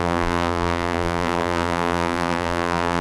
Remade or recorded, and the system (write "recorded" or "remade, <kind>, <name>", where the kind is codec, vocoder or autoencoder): remade, vocoder, BigVGAN v2